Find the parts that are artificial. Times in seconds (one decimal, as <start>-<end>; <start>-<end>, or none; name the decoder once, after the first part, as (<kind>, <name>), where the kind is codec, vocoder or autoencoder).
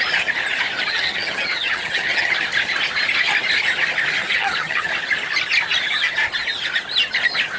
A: 0.9-2.3 (vocoder, HiFi-GAN); 4.2-4.9